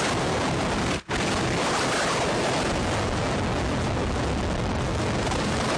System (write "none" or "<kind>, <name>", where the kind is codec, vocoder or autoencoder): none